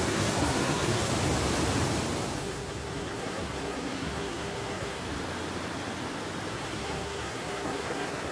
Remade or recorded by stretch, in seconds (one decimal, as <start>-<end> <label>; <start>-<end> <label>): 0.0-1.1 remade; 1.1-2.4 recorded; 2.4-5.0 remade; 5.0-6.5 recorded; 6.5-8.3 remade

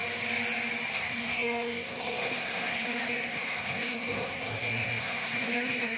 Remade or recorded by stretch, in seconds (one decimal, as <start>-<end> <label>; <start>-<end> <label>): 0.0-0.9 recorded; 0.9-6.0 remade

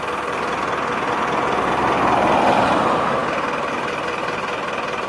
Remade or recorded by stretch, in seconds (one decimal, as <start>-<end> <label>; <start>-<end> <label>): 0.0-5.1 recorded